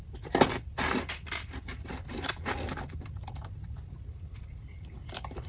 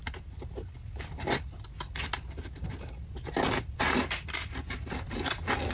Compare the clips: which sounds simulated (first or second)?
first